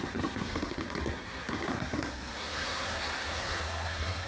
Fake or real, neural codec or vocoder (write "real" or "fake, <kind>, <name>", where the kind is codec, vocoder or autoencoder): fake, codec, SNAC